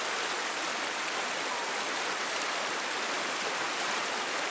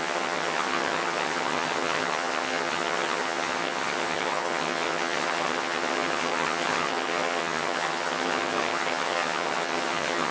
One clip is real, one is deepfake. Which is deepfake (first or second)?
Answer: second